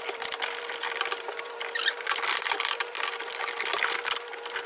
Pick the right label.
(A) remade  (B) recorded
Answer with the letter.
A